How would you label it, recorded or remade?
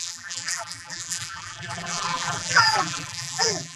remade